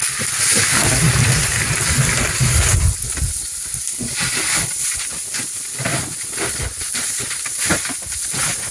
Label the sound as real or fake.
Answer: real